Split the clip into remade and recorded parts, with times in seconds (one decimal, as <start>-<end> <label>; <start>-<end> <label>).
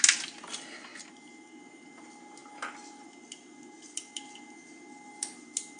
0.0-5.8 recorded